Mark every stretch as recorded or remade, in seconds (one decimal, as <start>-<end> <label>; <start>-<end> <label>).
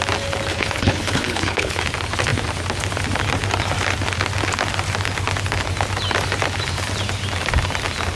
0.0-0.5 recorded; 0.5-1.8 remade; 1.8-8.2 recorded